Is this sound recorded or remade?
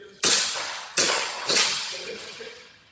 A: remade